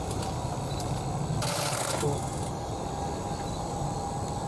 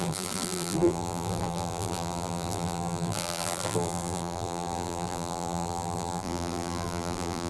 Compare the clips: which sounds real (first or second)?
first